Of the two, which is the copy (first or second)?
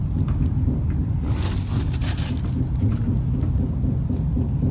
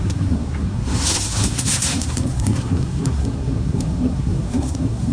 second